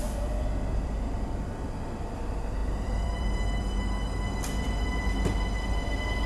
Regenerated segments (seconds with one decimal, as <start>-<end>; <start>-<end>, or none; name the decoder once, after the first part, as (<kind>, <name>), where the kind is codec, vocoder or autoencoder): 0.0-1.5 (vocoder, BigVGAN v2); 2.6-3.6